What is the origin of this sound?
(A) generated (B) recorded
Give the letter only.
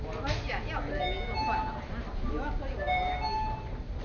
B